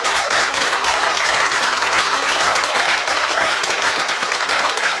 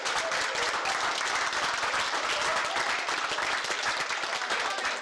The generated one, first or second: first